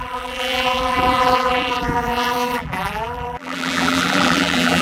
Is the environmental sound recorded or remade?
remade